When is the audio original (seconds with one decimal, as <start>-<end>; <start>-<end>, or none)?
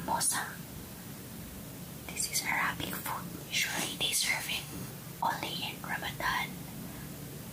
0.0-3.7; 4.9-7.5